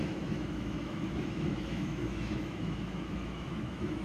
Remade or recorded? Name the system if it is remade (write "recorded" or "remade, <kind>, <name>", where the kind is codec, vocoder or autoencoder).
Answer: remade, autoencoder, DAC-VAE